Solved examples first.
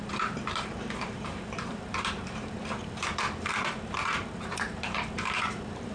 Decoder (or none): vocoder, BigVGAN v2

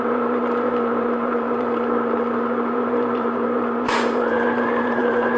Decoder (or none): vocoder, BigVGAN v2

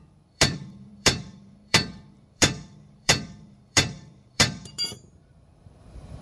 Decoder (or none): vocoder, BigVGAN v2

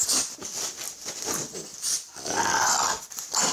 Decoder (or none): vocoder, BigVGAN v2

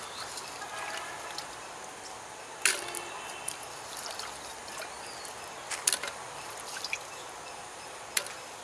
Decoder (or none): none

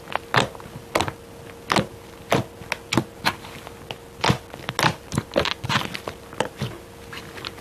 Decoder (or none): none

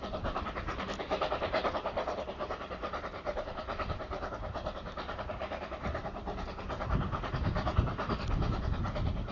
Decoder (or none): vocoder, BigVGAN v2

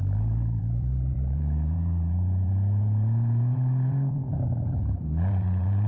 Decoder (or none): vocoder, BigVGAN v2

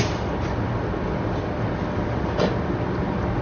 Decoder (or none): none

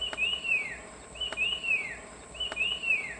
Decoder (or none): vocoder, BigVGAN v2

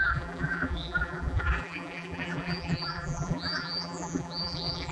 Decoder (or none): vocoder, BigVGAN v2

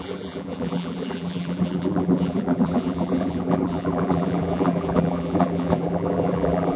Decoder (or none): vocoder, BigVGAN v2